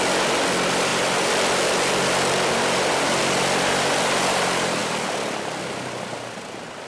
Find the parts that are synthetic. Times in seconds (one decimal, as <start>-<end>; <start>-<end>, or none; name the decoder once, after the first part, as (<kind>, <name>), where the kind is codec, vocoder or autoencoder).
none